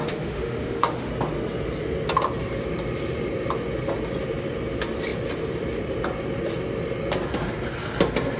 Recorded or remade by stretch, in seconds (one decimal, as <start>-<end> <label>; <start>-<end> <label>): 0.0-1.1 remade; 1.1-8.4 recorded

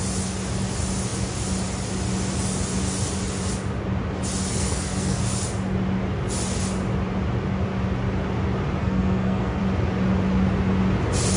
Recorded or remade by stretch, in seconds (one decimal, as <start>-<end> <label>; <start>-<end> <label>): 0.0-4.5 recorded; 4.5-5.2 remade; 5.2-8.8 recorded; 8.8-9.6 remade; 9.6-11.4 recorded

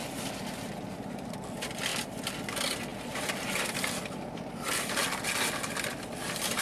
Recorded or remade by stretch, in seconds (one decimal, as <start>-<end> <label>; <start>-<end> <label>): 0.0-2.9 recorded; 2.9-4.1 remade; 4.1-5.0 recorded; 5.0-6.0 remade; 6.0-6.6 recorded